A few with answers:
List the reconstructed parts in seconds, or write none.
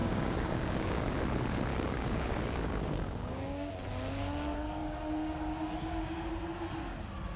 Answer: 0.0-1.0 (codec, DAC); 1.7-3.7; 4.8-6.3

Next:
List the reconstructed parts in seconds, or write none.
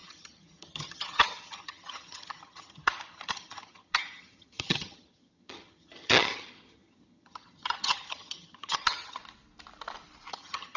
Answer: 0.0-9.2 (vocoder, HiFi-GAN); 10.3-10.8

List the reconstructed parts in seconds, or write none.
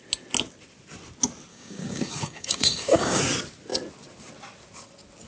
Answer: 1.5-3.2 (codec, DAC)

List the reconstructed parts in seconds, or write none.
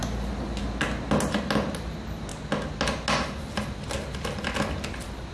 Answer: none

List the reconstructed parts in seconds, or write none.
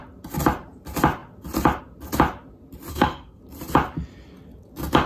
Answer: 2.9-3.4 (codec, SNAC)